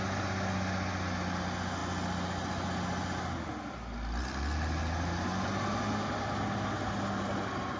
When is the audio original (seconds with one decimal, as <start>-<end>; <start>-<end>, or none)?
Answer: 0.0-7.8